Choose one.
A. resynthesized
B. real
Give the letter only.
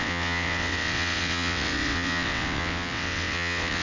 A